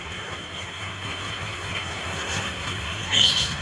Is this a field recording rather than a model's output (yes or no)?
no